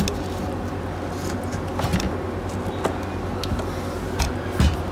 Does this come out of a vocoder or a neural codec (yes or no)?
no